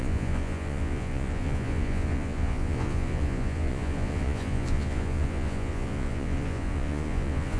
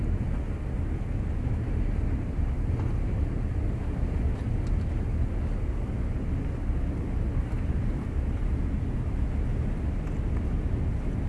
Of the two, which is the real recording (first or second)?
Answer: second